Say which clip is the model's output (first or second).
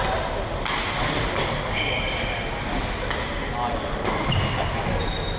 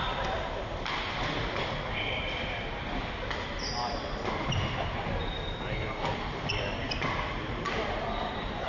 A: second